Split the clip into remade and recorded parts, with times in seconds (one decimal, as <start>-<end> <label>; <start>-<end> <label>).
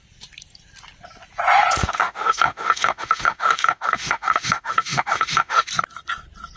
0.0-1.8 recorded; 1.8-5.7 remade; 5.7-6.6 recorded